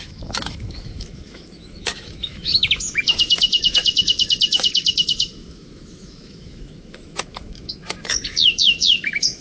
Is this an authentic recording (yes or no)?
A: no